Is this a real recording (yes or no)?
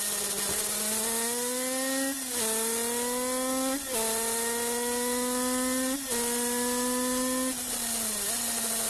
yes